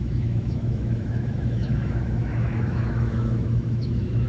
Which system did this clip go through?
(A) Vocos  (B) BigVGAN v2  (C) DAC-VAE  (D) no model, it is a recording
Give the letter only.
C